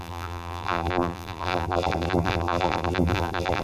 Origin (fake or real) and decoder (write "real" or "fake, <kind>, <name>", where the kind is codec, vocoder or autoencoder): fake, vocoder, BigVGAN v2